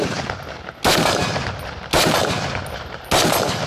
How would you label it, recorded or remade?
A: recorded